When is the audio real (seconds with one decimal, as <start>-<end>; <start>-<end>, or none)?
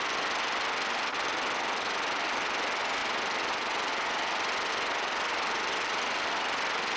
0.0-3.0; 3.5-7.0